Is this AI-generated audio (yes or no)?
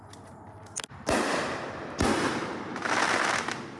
no